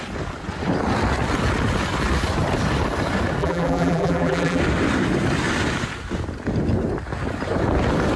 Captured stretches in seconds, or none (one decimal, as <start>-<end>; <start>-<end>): 0.0-3.4; 4.6-8.2